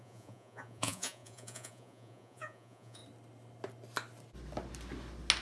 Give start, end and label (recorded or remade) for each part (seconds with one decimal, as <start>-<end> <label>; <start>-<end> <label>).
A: 0.0-3.0 remade; 3.0-5.4 recorded